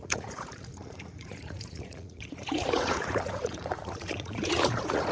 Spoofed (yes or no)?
yes